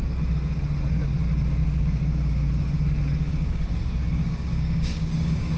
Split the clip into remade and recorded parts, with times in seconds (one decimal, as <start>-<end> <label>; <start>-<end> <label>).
0.0-1.6 recorded; 1.6-2.5 remade; 2.5-3.3 recorded; 3.3-5.6 remade